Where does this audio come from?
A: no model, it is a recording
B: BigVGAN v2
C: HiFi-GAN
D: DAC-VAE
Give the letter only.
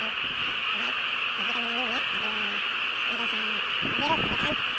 A